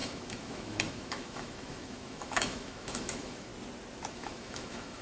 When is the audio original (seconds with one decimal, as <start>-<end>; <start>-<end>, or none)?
3.5-4.1